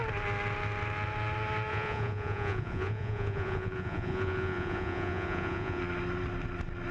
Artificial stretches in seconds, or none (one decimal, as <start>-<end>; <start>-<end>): 1.7-5.8